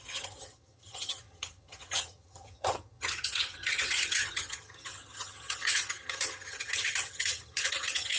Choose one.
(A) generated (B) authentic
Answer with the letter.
A